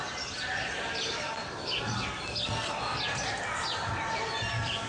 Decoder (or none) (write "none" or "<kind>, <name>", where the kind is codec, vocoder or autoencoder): none